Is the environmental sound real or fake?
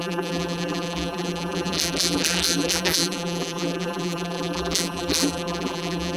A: fake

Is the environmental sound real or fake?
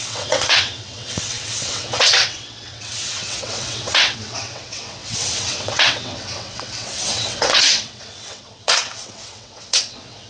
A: fake